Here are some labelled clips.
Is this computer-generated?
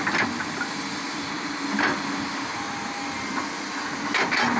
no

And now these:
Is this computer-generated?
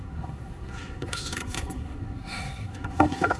yes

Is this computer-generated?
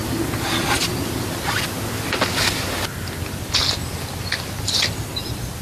no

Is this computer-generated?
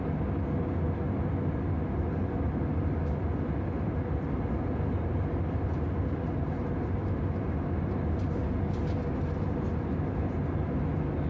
no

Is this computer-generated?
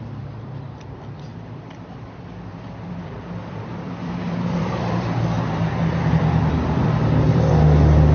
yes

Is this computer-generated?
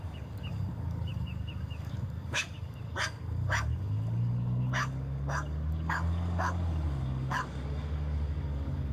yes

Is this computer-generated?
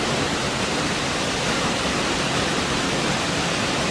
no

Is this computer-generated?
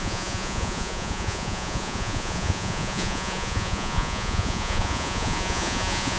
yes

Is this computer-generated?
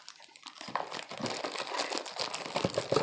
yes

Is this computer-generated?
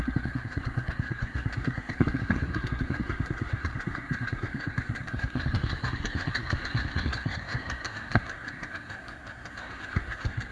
yes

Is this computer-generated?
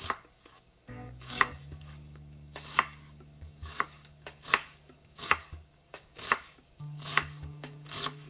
yes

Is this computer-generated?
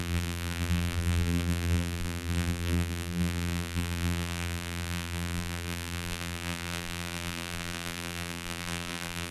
yes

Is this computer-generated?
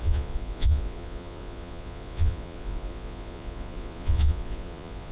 yes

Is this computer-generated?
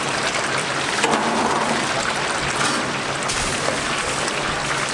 no